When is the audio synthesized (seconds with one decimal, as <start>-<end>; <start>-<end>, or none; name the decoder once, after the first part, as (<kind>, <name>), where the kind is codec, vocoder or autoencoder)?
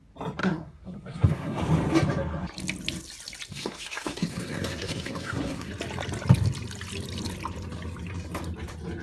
0.4-1.6 (codec, SNAC); 3.5-5.7